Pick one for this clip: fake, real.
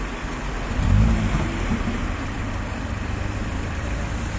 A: real